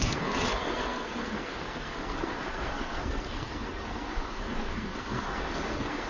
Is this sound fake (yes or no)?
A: yes